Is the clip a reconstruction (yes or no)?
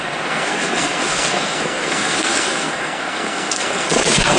yes